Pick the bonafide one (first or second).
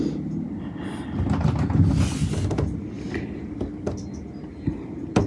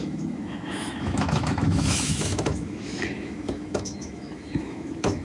first